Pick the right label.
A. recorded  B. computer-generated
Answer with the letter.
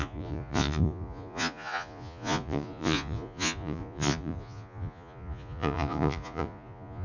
B